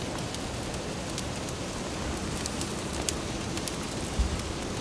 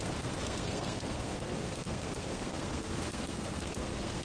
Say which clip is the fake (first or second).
second